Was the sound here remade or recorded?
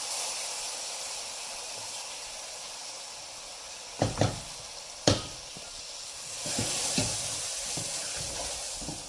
recorded